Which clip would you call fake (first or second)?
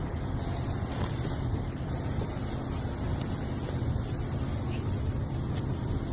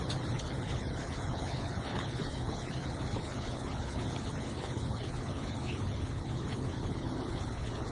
second